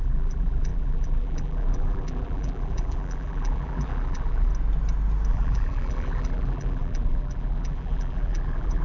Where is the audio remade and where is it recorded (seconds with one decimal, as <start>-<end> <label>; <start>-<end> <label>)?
0.0-4.5 remade; 4.5-5.3 recorded; 5.3-8.8 remade

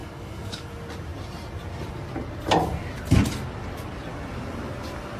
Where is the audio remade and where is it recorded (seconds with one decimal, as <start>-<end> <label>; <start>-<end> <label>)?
0.0-0.7 remade; 0.7-5.2 recorded